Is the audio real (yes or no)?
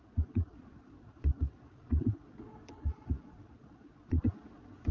no